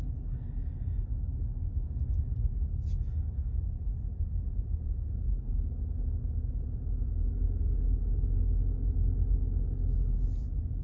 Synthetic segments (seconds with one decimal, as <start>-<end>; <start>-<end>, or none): 4.5-5.5